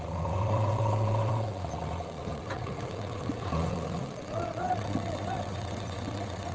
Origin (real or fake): fake